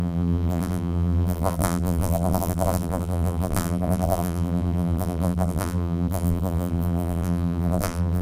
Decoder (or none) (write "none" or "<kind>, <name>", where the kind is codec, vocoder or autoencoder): vocoder, BigVGAN v2